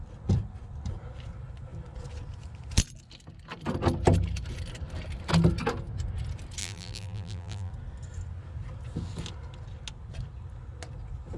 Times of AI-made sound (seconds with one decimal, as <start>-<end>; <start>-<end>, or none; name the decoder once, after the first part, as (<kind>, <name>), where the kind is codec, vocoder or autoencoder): 6.6-7.7 (vocoder, BigVGAN v2)